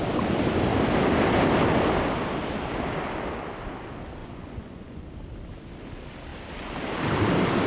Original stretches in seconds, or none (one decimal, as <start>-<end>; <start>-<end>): 0.0-4.2; 5.0-7.7

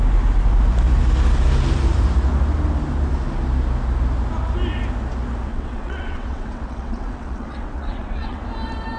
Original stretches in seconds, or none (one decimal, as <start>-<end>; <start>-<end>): 0.0-5.5; 8.4-9.0

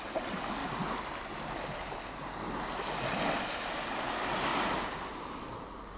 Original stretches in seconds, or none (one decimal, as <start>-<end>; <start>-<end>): 0.0-6.0

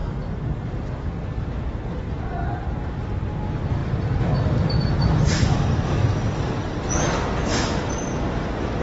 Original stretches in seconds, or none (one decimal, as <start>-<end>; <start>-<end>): 0.8-3.8; 6.9-7.5; 8.2-8.8

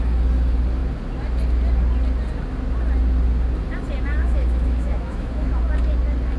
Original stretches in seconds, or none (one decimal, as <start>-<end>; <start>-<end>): 0.0-4.2; 5.6-6.4

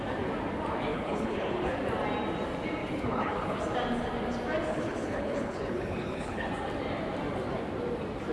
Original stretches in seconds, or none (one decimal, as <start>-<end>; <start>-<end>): 0.0-0.9; 1.7-2.8; 3.6-4.7; 6.5-8.3

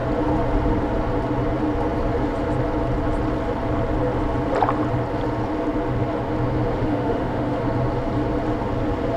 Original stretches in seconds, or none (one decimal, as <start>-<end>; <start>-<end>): 0.0-6.7; 7.6-9.2